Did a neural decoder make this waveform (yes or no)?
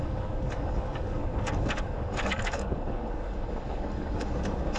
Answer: yes